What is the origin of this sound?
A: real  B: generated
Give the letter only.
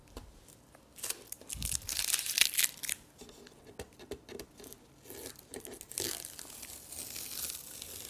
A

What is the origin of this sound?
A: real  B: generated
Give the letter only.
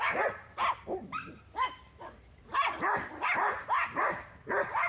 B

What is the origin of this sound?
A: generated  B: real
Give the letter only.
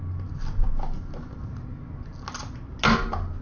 B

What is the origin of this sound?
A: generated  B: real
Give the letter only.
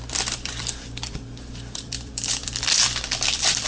A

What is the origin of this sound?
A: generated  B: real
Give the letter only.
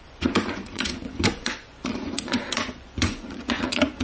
A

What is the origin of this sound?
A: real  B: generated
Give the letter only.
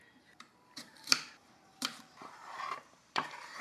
B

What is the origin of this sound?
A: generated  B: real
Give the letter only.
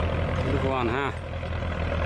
B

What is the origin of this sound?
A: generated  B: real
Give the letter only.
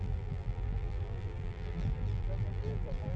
A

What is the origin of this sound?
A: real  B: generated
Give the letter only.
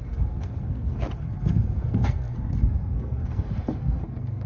B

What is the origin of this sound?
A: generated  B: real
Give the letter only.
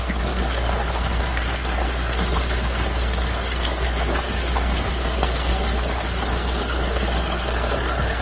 A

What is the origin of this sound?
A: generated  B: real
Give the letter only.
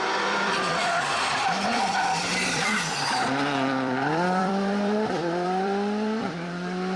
A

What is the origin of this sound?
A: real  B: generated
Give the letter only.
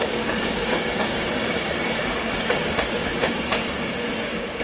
B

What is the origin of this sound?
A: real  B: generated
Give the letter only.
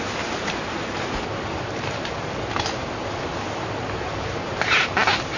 A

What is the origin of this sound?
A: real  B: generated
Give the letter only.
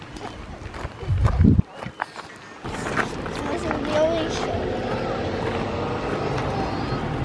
A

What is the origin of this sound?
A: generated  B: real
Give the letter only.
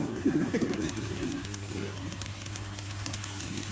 A